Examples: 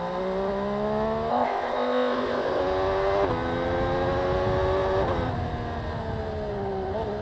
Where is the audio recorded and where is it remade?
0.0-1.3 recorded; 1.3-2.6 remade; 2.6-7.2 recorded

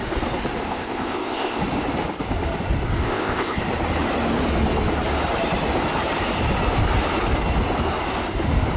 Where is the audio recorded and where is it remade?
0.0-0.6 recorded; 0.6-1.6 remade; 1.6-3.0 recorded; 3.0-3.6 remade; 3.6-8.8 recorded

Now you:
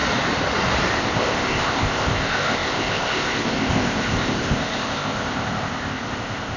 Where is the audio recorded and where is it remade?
0.0-1.0 recorded; 1.0-6.6 remade